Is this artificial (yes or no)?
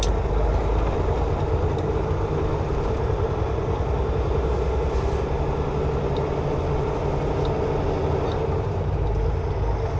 no